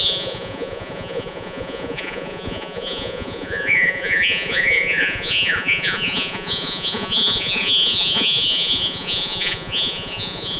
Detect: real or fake fake